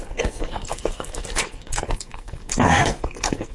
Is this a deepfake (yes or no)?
yes